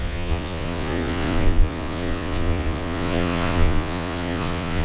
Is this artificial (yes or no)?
yes